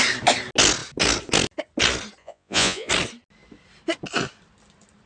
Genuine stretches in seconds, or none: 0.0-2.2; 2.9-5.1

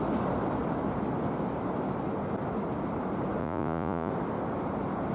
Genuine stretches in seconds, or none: 0.0-3.4; 4.1-5.1